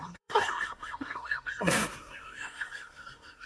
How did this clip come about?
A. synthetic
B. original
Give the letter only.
A